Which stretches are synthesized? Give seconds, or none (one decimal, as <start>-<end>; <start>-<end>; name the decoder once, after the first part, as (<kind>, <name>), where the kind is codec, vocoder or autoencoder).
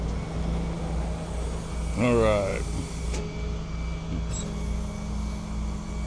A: 2.5-3.1 (vocoder, BigVGAN v2)